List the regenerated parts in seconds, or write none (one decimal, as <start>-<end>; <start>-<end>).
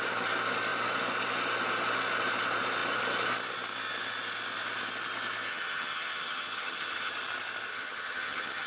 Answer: 5.5-7.1; 7.7-8.7